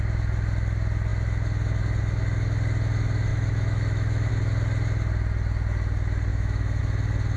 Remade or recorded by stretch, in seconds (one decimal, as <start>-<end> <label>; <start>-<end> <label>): 0.0-3.3 recorded; 3.3-4.3 remade; 4.3-6.3 recorded; 6.3-6.8 remade; 6.8-7.4 recorded